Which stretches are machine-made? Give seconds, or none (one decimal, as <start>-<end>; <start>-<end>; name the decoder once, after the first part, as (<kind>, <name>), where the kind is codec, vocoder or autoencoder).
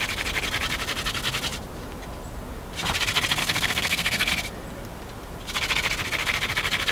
3.4-4.3 (codec, SNAC)